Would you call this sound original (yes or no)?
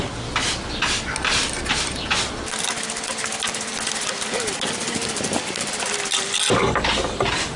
yes